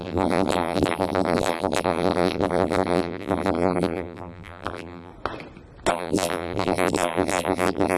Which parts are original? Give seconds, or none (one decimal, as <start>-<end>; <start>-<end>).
5.1-5.9

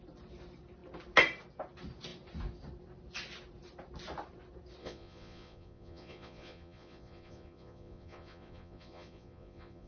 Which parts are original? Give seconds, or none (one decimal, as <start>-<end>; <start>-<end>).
0.0-4.8

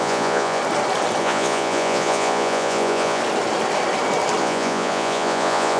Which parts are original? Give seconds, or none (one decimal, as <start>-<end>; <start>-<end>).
0.6-1.2; 3.2-4.4

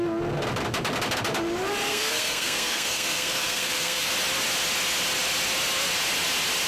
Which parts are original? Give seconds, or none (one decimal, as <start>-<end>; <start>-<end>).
0.0-1.9; 4.1-6.7

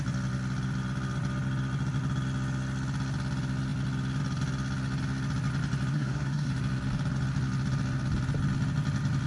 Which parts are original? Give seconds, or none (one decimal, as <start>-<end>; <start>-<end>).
0.0-5.9; 6.5-9.3

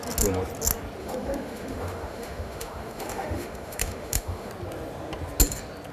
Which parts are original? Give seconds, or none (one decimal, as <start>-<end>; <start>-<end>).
0.0-1.0; 4.5-5.9

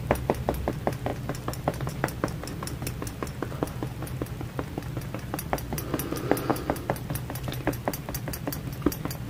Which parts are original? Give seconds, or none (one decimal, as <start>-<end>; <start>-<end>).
0.0-6.5; 7.4-9.3